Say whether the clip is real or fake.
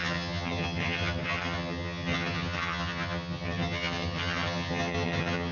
fake